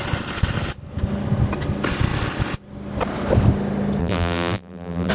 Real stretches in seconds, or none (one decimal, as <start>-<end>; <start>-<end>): 0.0-4.0